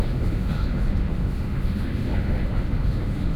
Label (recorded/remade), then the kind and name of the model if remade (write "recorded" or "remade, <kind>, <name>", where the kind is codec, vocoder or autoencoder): remade, autoencoder, DAC-VAE